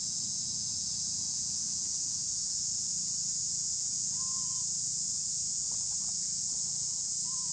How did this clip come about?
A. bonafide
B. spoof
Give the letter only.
B